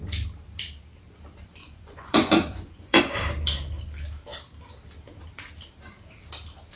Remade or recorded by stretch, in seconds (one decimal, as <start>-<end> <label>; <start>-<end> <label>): 0.0-1.6 recorded; 1.6-3.0 remade; 3.0-6.8 recorded